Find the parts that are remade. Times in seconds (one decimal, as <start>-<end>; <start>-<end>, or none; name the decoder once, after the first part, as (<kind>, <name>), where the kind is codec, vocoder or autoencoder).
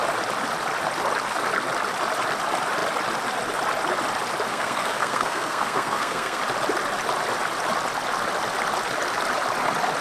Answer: 4.5-6.4 (codec, SNAC)